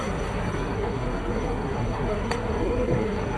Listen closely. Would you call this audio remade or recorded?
remade